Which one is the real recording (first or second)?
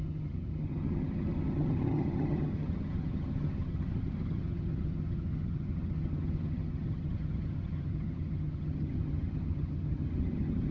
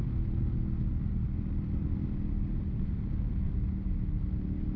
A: second